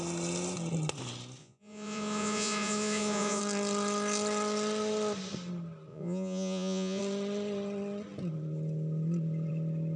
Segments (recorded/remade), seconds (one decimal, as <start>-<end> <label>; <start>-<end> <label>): 0.0-1.4 recorded; 1.4-3.4 remade; 3.4-5.9 recorded; 5.9-7.0 remade; 7.0-10.0 recorded